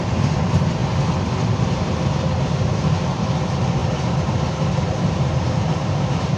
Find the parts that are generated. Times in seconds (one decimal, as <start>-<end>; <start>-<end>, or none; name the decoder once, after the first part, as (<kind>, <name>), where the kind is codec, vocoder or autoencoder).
0.0-0.8 (vocoder, BigVGAN v2); 1.5-6.4